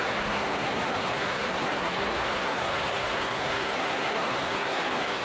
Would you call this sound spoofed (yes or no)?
yes